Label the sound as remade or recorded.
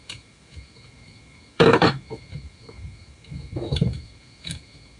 remade